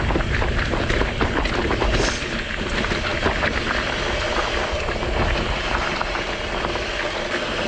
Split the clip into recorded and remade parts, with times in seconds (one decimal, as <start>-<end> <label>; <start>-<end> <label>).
0.0-7.7 recorded